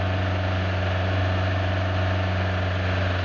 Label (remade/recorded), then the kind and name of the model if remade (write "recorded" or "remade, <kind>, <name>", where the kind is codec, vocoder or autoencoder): recorded